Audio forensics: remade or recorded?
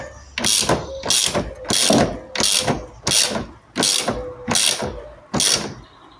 recorded